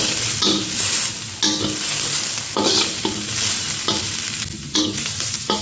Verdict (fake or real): real